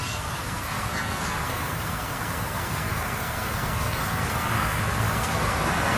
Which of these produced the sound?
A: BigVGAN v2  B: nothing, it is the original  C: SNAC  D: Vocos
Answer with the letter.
C